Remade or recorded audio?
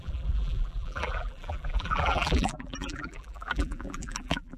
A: remade